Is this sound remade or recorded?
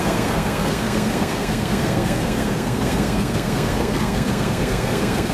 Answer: remade